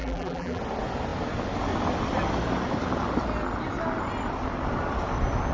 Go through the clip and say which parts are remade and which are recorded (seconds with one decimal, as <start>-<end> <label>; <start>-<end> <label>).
0.0-0.6 remade; 0.6-5.5 recorded